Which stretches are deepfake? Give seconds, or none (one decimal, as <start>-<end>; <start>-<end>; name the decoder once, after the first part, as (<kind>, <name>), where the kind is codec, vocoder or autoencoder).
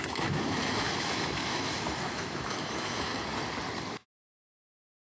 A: 0.0-3.1 (autoencoder, DAC-VAE); 3.9-5.1